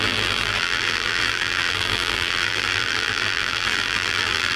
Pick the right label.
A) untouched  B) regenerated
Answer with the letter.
B